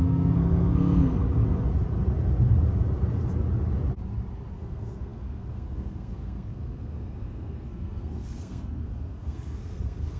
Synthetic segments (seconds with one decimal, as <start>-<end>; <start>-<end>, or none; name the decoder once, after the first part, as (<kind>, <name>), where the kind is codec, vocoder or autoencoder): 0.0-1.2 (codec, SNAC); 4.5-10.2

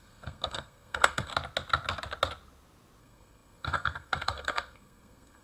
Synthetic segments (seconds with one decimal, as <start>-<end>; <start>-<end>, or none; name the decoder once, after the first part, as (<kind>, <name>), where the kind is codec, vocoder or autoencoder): 0.0-1.3 (codec, SNAC); 3.0-5.4

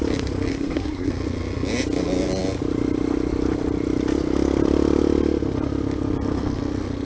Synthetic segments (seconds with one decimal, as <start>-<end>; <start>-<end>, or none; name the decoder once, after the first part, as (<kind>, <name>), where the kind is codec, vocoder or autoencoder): 0.5-1.1 (codec, SNAC)